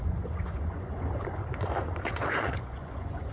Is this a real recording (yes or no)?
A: no